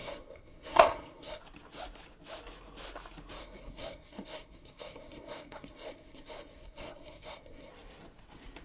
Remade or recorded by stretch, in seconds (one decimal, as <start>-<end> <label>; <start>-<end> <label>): 0.0-1.4 remade; 1.4-3.4 recorded; 3.4-7.7 remade; 7.7-8.6 recorded